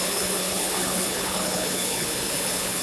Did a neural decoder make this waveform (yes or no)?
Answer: yes